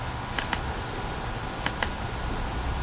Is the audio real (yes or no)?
yes